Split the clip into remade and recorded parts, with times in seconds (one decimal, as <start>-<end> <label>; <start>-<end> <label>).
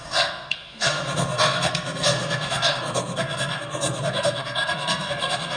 0.0-5.6 remade